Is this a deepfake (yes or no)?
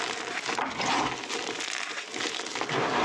no